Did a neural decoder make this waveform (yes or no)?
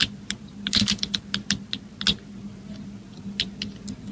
no